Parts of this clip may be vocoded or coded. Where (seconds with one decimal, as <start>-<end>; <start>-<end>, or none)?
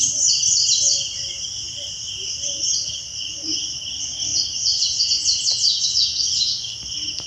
3.2-3.8; 4.3-6.7